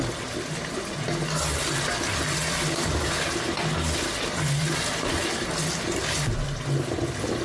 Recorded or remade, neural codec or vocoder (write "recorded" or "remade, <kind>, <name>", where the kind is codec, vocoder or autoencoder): recorded